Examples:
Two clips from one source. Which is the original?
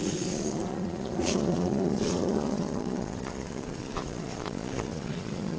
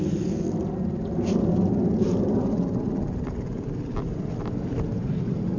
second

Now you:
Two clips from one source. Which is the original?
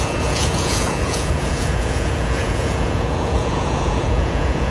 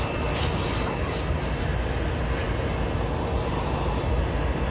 second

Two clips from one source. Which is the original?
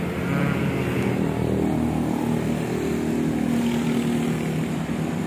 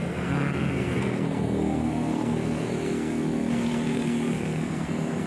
first